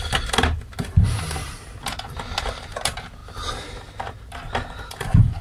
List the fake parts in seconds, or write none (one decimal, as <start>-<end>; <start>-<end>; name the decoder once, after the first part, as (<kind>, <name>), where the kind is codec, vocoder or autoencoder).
0.0-1.4 (vocoder, BigVGAN v2); 2.4-3.2; 4.9-5.4